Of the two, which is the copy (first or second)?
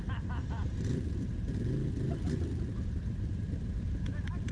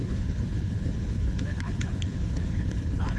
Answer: second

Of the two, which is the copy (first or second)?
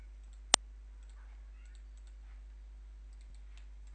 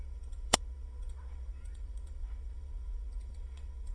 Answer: second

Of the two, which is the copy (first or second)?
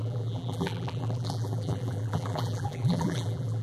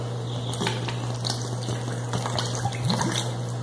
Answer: first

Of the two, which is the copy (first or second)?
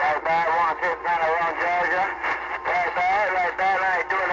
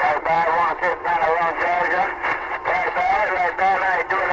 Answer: second